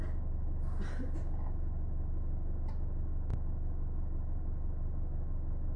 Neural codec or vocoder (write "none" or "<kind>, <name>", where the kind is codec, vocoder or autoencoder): none